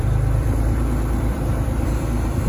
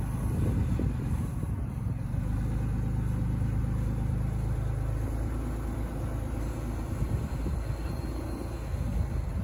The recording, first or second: second